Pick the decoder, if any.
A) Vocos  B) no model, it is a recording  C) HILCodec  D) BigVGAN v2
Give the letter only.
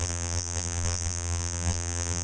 D